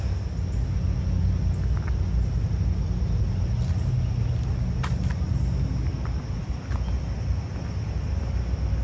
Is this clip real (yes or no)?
yes